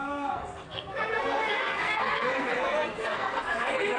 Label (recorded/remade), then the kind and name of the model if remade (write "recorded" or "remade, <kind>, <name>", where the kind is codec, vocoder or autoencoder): remade, codec, SNAC